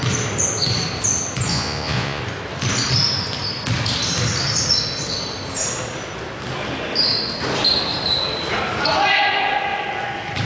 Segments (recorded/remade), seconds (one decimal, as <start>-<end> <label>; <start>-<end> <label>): 0.0-1.5 recorded; 1.5-2.2 remade; 2.2-10.5 recorded